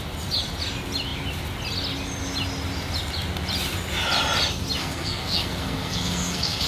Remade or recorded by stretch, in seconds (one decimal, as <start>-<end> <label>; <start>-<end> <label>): 0.0-4.8 recorded; 4.8-6.7 remade